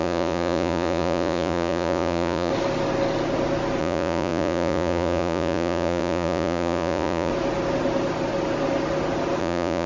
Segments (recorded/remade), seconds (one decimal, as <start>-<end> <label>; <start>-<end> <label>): 0.0-2.5 remade; 2.5-3.8 recorded; 3.8-7.3 remade; 7.3-9.4 recorded; 9.4-9.9 remade